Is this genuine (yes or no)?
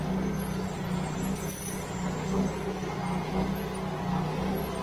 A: yes